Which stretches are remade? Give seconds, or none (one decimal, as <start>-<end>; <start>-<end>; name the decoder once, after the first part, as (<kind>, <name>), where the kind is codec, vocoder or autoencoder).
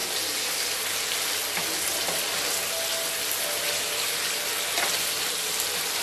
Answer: none